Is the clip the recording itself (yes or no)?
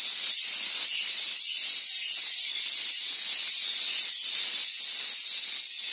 yes